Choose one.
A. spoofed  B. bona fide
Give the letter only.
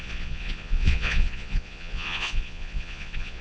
A